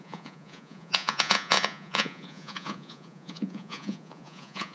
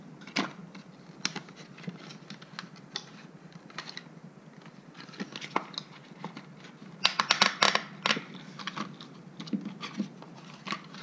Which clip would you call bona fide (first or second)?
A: second